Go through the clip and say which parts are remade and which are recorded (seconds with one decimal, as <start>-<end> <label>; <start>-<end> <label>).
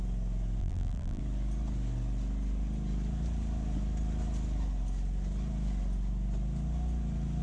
0.0-0.6 recorded; 0.6-1.2 remade; 1.2-7.4 recorded